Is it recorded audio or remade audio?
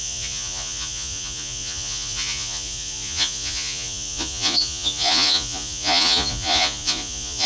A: remade